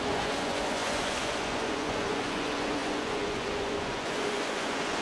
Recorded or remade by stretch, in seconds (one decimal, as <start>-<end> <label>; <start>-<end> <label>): 0.0-5.0 remade